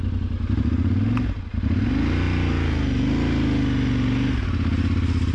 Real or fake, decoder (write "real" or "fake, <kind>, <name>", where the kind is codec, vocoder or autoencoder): real